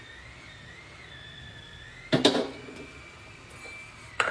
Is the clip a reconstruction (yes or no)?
no